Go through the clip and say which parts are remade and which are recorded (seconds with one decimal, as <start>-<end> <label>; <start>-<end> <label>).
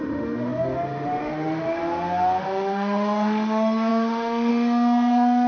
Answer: 0.0-1.8 remade; 1.8-2.4 recorded; 2.4-5.5 remade